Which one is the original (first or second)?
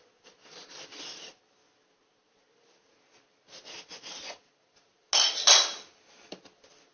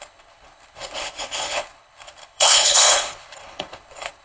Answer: first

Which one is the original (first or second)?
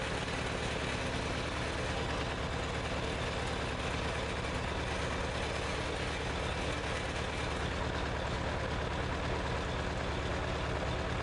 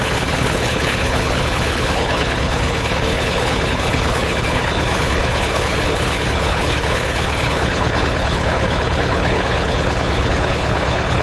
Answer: first